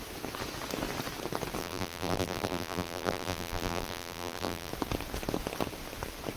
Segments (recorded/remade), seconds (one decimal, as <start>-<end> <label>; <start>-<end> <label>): 0.0-1.6 recorded; 1.6-4.7 remade; 4.7-6.4 recorded